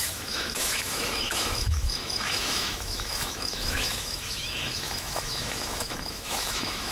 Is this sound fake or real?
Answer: fake